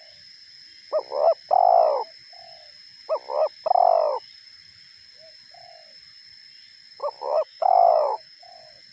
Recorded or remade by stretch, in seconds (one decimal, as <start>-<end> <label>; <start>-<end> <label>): 0.0-7.0 recorded; 7.0-8.5 remade; 8.5-8.9 recorded